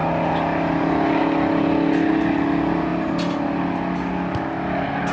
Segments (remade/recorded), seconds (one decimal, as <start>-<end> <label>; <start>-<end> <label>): 0.0-5.1 recorded